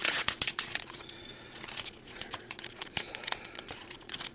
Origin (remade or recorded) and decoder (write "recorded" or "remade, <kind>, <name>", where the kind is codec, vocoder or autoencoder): remade, vocoder, Vocos